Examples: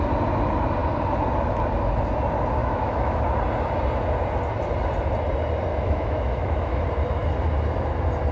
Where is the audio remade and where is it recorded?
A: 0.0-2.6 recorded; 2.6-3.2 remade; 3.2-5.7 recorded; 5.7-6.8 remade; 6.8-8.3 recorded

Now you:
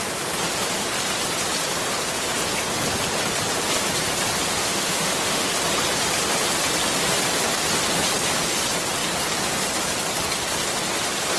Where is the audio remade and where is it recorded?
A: 0.0-4.6 recorded; 4.6-5.5 remade; 5.5-11.4 recorded

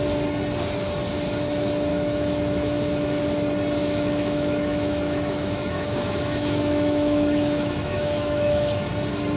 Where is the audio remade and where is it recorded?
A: 0.0-1.9 recorded; 1.9-3.2 remade; 3.2-3.8 recorded; 3.8-8.9 remade; 8.9-9.4 recorded

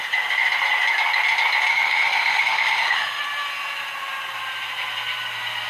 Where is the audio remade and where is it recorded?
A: 0.0-1.7 recorded; 1.7-3.2 remade; 3.2-5.7 recorded

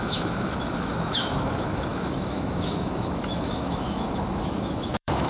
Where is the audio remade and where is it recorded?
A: 0.0-5.3 remade

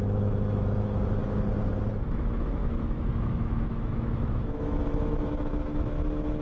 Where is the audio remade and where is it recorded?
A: 0.0-1.2 remade; 1.2-1.9 recorded; 1.9-6.4 remade

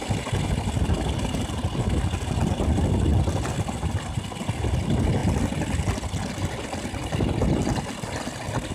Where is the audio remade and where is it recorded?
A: 0.0-8.7 recorded

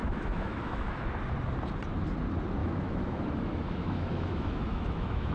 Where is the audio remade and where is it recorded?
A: 0.0-1.1 remade; 1.1-2.6 recorded; 2.6-5.3 remade